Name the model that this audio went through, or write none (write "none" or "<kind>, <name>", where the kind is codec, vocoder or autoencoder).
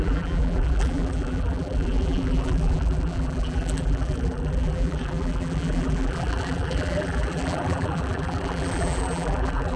vocoder, BigVGAN v2